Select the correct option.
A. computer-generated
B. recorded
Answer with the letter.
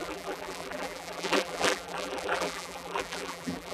A